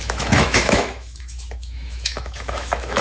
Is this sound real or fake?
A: fake